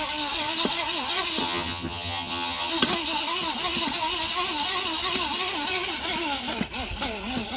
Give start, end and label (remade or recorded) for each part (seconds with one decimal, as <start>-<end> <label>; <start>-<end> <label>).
0.0-1.4 recorded; 1.4-2.7 remade; 2.7-7.6 recorded

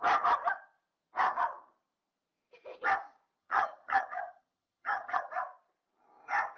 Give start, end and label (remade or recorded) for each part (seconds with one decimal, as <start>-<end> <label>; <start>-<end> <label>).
0.0-3.4 recorded; 3.4-5.3 remade; 5.3-6.6 recorded

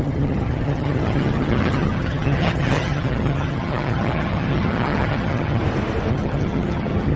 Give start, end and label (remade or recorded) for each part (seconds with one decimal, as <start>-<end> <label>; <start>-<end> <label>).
0.0-5.6 remade; 5.6-6.1 recorded; 6.1-7.2 remade

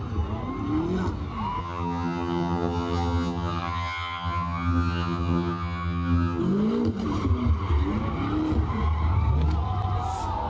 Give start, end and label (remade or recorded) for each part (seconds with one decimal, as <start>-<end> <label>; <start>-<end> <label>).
0.0-1.6 recorded; 1.6-6.4 remade; 6.4-10.5 recorded

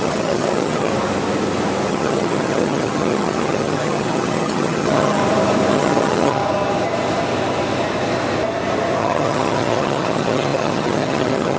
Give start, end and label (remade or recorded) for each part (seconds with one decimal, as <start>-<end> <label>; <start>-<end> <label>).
0.0-0.9 remade; 0.9-1.9 recorded; 1.9-5.2 remade; 5.2-5.7 recorded; 5.7-6.4 remade; 6.4-9.0 recorded; 9.0-11.6 remade